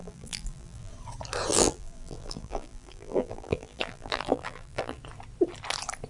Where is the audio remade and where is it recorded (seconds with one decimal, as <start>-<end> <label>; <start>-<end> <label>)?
0.0-0.9 remade; 0.9-1.5 recorded; 1.5-5.0 remade; 5.0-6.1 recorded